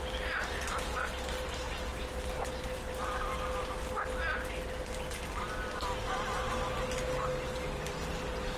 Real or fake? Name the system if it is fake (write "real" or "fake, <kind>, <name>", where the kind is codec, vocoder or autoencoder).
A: real